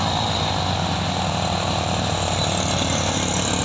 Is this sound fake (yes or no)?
no